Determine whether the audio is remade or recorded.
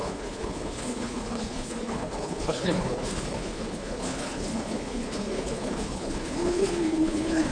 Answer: remade